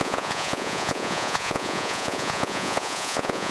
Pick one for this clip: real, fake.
fake